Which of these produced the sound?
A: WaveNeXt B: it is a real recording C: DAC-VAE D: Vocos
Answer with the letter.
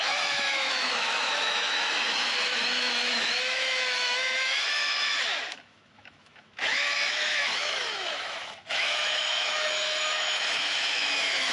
C